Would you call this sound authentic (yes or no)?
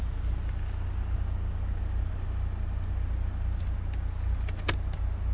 yes